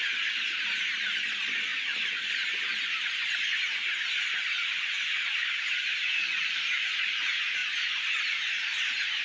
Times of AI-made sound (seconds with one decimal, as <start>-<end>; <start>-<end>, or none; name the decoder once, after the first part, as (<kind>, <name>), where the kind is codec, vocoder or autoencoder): 5.8-7.1 (vocoder, Vocos)